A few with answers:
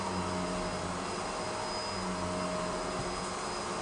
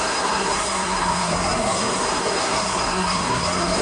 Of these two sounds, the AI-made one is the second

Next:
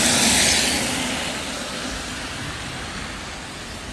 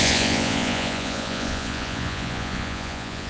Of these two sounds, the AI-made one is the second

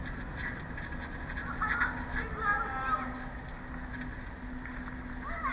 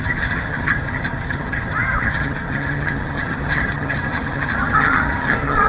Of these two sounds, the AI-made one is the second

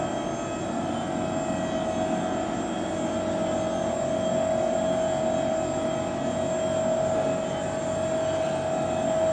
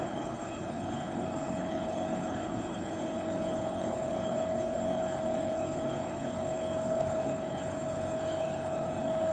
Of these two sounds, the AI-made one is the second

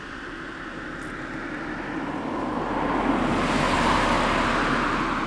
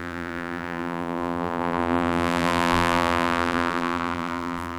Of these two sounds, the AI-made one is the second